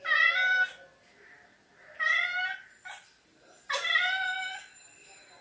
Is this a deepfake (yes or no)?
no